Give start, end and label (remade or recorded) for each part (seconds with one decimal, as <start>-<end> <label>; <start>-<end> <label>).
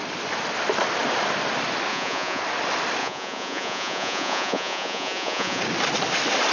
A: 0.0-1.9 recorded; 1.9-2.4 remade; 2.4-3.0 recorded; 3.0-5.6 remade; 5.6-6.5 recorded